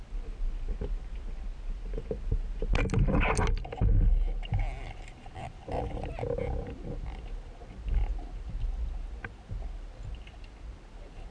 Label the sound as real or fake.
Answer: real